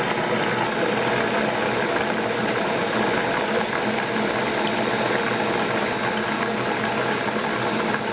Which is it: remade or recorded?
recorded